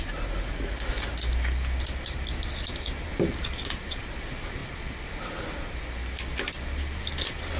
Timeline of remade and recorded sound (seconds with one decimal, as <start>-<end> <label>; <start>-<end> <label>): 0.0-7.6 recorded